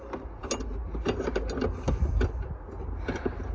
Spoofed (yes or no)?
no